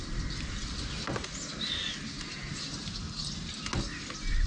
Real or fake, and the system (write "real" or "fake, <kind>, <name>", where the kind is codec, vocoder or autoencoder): real